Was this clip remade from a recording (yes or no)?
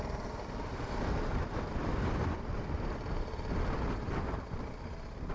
no